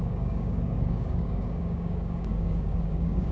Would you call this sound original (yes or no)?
no